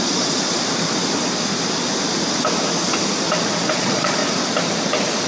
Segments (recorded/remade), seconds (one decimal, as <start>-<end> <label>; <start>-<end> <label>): 0.0-0.5 remade; 0.5-3.7 recorded; 3.7-4.2 remade; 4.2-5.3 recorded